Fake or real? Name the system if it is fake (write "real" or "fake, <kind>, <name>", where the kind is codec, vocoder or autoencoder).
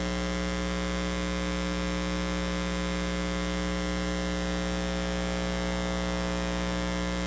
real